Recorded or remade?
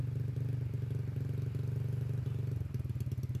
recorded